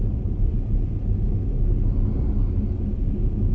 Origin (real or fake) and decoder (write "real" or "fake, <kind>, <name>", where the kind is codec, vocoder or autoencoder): real